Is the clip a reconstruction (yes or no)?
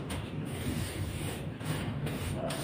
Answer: yes